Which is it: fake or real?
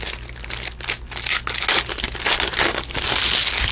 real